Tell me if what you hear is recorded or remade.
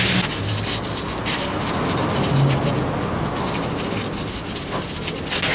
recorded